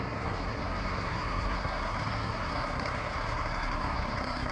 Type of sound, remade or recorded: remade